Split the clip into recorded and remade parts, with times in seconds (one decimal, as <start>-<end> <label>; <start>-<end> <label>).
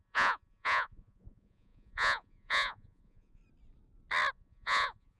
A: 0.0-3.4 remade; 3.4-4.3 recorded; 4.3-5.2 remade